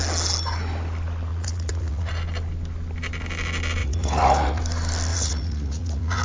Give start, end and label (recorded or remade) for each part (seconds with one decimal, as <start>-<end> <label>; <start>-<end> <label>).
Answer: 0.0-1.3 recorded; 1.3-2.1 remade; 2.1-3.8 recorded; 3.8-4.6 remade; 4.6-5.1 recorded; 5.1-6.2 remade